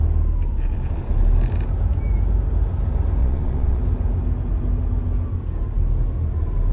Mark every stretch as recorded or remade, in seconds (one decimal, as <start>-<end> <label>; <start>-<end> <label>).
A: 0.0-3.2 recorded; 3.2-3.8 remade; 3.8-6.7 recorded